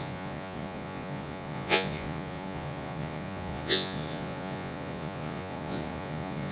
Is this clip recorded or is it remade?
remade